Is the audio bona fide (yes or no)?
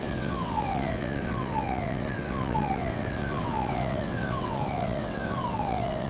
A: no